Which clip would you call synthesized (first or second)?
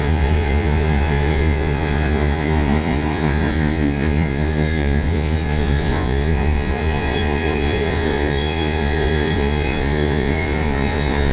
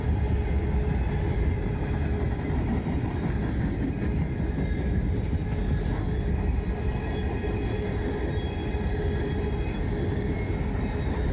first